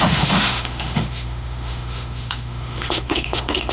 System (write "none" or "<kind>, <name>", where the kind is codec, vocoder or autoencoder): autoencoder, DAC-VAE